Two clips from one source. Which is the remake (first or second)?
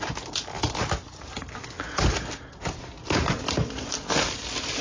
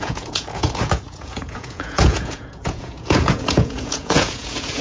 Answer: second